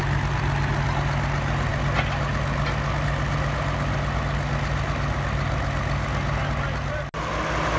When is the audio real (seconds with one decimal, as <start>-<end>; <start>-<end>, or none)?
0.0-7.8